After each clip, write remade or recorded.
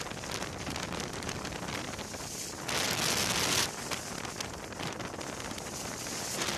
recorded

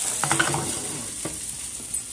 recorded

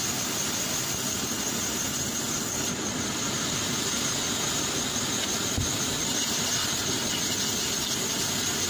recorded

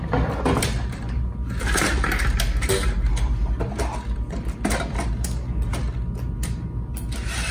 recorded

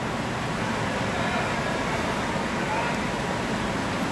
recorded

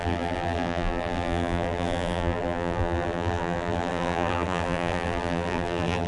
remade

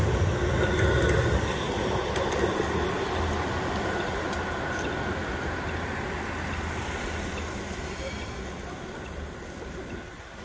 recorded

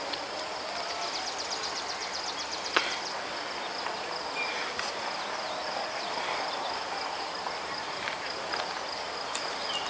remade